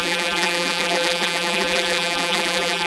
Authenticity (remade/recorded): remade